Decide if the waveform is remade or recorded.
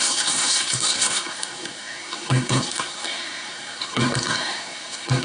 remade